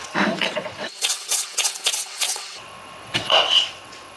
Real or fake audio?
fake